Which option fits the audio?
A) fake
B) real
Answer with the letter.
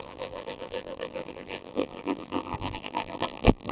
A